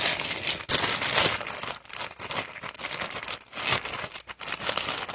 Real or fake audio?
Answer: real